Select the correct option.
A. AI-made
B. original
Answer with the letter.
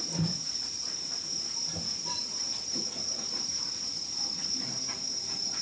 A